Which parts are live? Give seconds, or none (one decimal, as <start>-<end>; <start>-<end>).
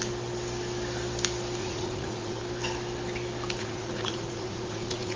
0.0-1.6; 2.4-3.6